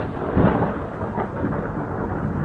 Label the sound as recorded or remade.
recorded